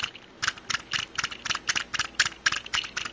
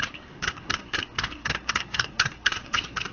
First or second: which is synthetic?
second